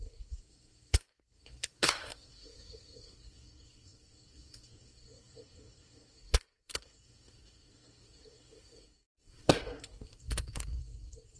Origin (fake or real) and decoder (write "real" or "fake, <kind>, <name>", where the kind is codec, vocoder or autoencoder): fake, codec, SNAC